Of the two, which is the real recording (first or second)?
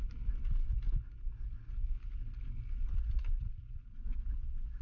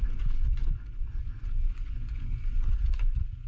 first